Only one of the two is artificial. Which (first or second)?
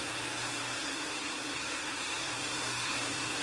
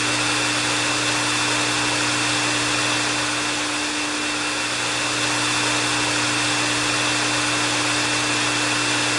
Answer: first